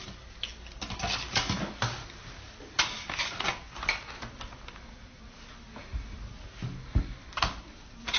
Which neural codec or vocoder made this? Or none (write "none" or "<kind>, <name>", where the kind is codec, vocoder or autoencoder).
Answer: none